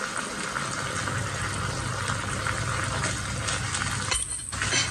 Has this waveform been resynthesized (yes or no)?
no